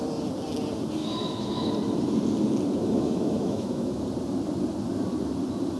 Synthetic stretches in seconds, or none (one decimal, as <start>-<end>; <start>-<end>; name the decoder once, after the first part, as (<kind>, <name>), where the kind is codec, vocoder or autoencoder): 1.0-1.7 (autoencoder, DAC-VAE); 2.8-4.0